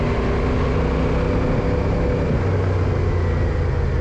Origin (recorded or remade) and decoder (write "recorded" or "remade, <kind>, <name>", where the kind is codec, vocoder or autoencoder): recorded